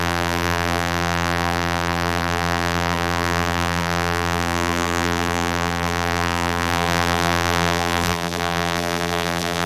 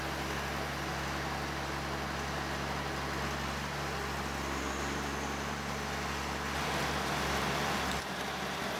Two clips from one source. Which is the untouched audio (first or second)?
second